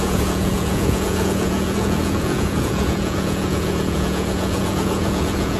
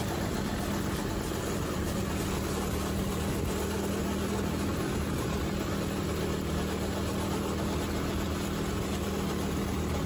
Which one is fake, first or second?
first